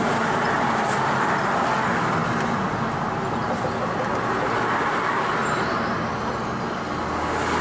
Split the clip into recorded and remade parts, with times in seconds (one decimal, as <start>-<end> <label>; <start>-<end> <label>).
0.0-7.6 recorded